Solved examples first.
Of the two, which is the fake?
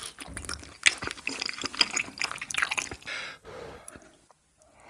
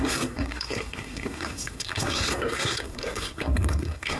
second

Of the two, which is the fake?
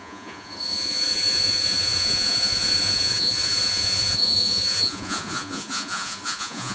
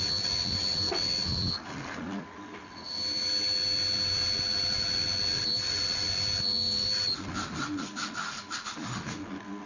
first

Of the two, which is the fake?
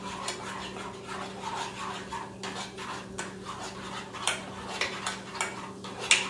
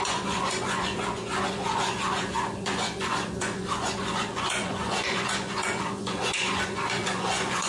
second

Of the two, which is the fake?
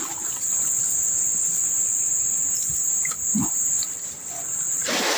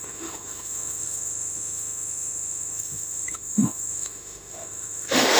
second